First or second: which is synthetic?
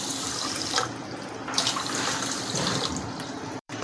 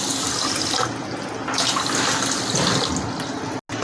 first